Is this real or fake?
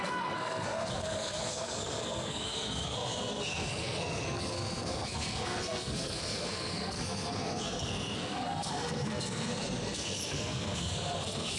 fake